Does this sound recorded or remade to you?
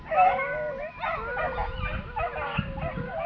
recorded